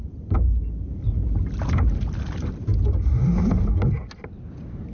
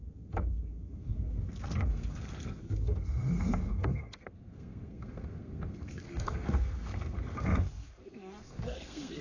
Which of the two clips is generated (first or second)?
second